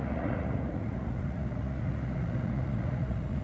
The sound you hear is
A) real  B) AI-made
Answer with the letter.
B